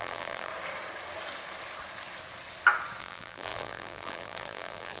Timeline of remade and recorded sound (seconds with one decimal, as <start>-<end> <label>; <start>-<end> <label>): 0.0-0.5 remade; 0.5-3.0 recorded; 3.0-5.0 remade